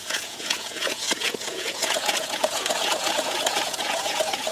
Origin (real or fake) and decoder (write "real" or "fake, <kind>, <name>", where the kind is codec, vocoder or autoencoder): fake, vocoder, Vocos